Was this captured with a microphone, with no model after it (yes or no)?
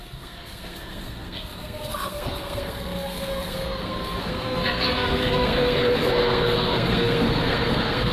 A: no